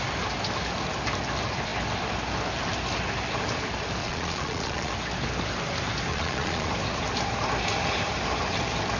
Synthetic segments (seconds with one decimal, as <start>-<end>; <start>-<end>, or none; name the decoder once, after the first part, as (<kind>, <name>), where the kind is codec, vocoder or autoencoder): 4.0-4.9 (vocoder, Vocos); 6.1-6.7

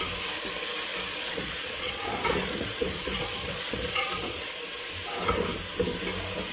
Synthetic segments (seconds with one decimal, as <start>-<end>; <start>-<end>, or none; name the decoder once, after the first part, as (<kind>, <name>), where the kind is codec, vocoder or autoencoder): 0.9-4.7 (vocoder, Vocos)

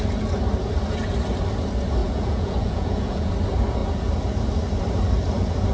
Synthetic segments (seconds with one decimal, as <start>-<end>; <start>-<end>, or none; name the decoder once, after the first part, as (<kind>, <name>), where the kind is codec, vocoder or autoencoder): 2.0-3.3 (vocoder, Vocos)

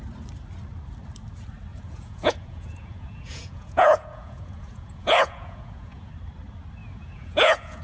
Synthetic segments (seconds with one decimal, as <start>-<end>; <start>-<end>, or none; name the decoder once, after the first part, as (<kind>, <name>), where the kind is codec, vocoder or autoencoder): 1.7-6.1 (vocoder, Vocos); 6.8-7.8

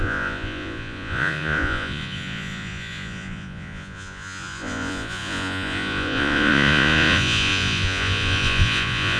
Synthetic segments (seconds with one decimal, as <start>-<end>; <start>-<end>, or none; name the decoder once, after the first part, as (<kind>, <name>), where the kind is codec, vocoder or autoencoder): 0.0-9.2 (vocoder, Vocos)

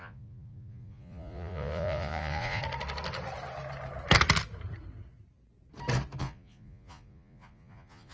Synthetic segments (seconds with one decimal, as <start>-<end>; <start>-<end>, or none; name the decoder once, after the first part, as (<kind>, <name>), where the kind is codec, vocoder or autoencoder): 0.0-2.6 (vocoder, Vocos); 6.2-8.1